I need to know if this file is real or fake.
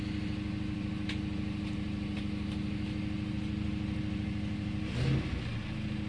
real